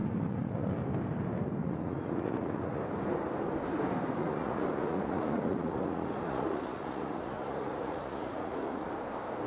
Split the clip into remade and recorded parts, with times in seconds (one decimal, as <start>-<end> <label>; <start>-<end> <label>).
0.0-0.7 remade; 0.7-1.6 recorded; 1.6-2.8 remade; 2.8-4.2 recorded; 4.2-8.9 remade; 8.9-9.5 recorded